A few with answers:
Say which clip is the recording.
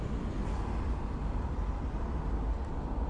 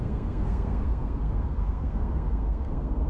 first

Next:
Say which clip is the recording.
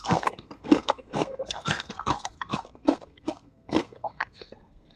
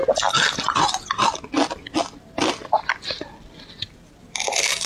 second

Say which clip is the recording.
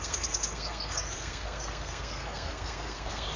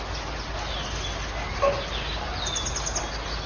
second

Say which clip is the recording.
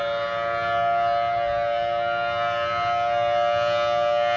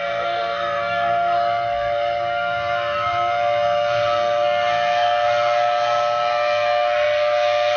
first